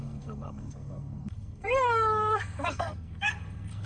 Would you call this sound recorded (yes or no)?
no